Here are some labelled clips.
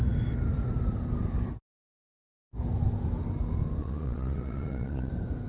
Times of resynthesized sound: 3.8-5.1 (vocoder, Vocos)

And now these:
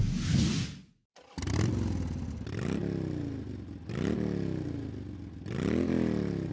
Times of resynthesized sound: none

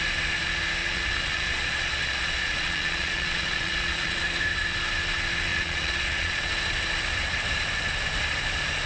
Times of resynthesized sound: 0.8-4.2 (vocoder, Vocos); 5.5-6.5

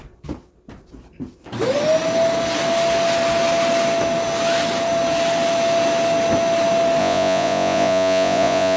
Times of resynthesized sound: 7.0-8.8 (vocoder, Vocos)

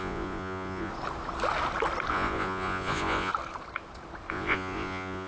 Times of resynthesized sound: 0.0-0.9 (vocoder, Vocos); 2.1-3.3; 4.3-5.3

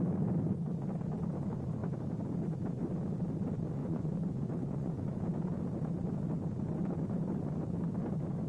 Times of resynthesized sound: 3.8-5.0 (vocoder, Vocos)

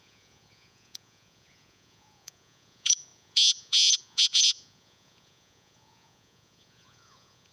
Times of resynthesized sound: 0.0-7.5 (vocoder, Vocos)